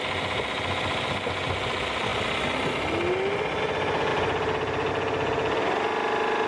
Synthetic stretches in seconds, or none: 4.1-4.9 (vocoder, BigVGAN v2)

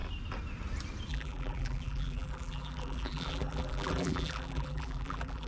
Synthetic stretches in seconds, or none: 1.1-5.5 (vocoder, BigVGAN v2)

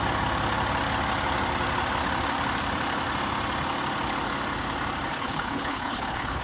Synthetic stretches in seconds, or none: 5.1-6.4 (codec, HILCodec)

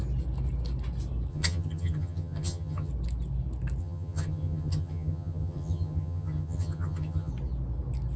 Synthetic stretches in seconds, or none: 1.3-2.9 (vocoder, HiFi-GAN); 3.8-7.3

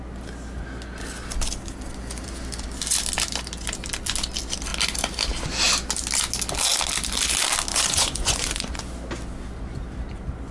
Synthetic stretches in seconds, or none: 7.7-8.8 (vocoder, Vocos)

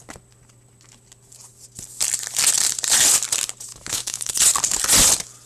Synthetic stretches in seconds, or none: 3.7-4.3 (autoencoder, DAC-VAE)

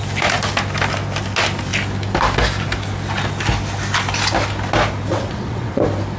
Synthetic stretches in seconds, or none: 5.1-5.8 (vocoder, WaveNeXt)